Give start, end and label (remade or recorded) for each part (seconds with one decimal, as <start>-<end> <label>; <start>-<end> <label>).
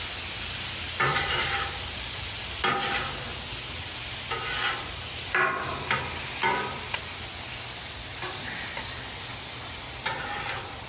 0.0-1.1 recorded; 1.1-2.2 remade; 2.2-10.9 recorded